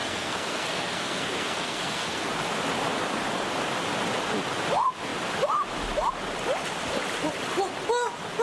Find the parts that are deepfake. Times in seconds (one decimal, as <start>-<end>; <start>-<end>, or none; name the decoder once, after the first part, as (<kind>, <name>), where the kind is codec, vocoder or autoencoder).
0.0-2.3 (codec, SNAC)